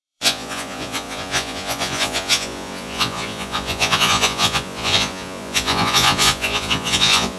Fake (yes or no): yes